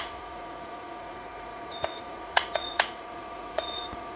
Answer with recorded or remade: remade